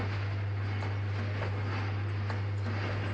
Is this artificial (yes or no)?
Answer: no